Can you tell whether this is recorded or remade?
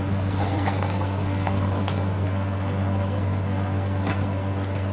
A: remade